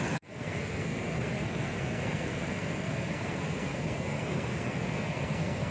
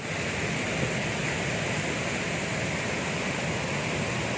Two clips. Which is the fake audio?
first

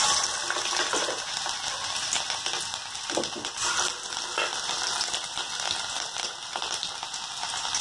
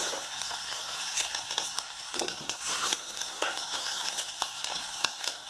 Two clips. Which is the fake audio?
second